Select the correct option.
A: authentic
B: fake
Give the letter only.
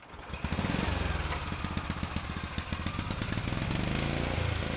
A